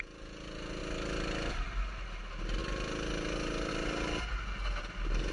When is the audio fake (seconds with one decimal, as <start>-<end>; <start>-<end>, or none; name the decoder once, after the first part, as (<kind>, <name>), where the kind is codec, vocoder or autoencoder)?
none